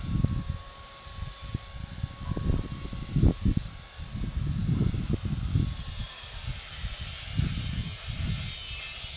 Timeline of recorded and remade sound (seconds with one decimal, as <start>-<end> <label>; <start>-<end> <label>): 0.0-9.2 recorded